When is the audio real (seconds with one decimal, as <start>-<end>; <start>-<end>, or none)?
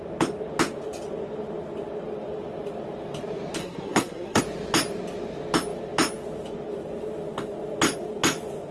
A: 0.0-3.6; 4.4-8.7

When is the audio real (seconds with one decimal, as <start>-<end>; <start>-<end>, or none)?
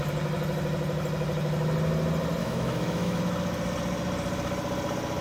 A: 0.0-2.4; 3.2-5.2